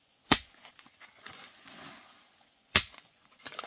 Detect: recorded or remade remade